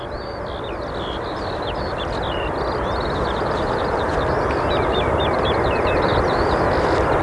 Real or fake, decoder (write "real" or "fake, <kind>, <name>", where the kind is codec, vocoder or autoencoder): fake, vocoder, BigVGAN v2